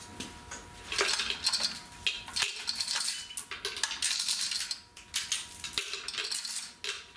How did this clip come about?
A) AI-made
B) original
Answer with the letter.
B